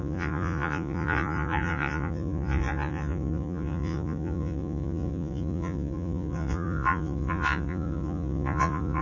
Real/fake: fake